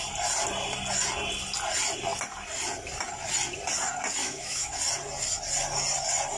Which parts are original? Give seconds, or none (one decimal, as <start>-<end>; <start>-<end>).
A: 0.0-4.2; 4.8-6.4